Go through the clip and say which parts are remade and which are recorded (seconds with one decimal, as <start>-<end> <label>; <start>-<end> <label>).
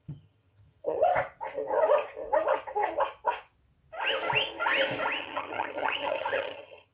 0.0-1.1 remade; 1.1-5.2 recorded; 5.2-6.9 remade